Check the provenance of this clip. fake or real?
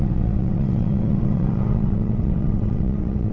fake